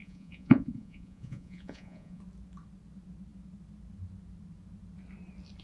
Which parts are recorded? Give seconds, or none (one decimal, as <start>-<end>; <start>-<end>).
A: 2.2-5.6